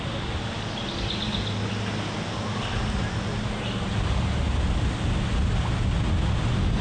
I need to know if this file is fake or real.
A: real